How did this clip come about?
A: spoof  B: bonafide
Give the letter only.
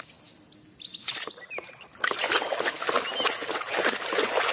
B